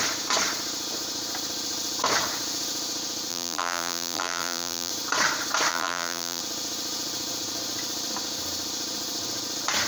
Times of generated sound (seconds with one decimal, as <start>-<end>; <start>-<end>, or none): 3.3-4.9; 5.7-6.4